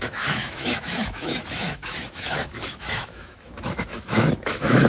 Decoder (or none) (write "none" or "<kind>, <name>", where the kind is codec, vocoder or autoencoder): autoencoder, DAC-VAE